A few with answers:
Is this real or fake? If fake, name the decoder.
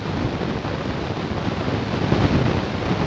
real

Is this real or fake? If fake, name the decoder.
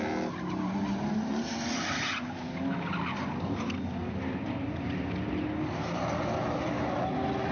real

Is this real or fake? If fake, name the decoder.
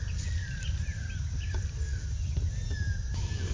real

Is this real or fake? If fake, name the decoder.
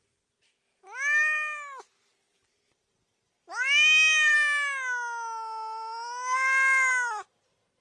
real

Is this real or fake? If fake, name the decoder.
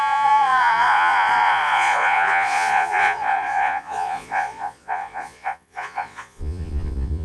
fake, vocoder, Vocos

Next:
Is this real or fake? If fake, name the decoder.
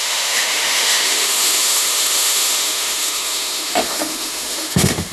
fake, autoencoder, DAC-VAE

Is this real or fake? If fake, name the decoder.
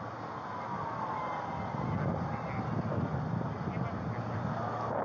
real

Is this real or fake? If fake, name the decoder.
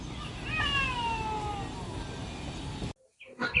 real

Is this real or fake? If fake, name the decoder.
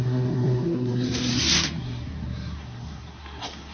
fake, codec, SNAC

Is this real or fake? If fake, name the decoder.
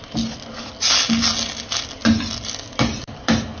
real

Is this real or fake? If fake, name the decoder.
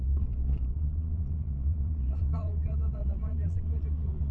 fake, vocoder, Vocos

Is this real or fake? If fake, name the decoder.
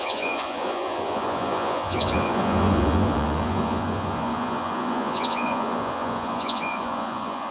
fake, vocoder, Vocos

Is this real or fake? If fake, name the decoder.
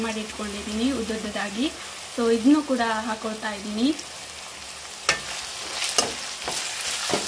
real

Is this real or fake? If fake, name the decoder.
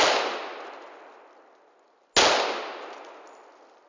real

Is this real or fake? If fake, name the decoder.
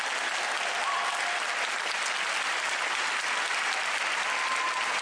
real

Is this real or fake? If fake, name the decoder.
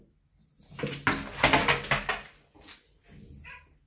real